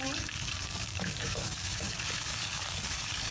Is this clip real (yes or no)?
no